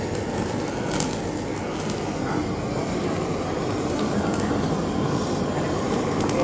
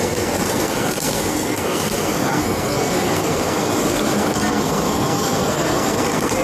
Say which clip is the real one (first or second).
first